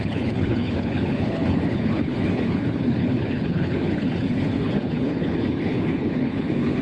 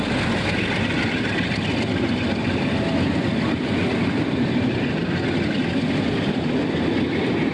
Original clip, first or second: second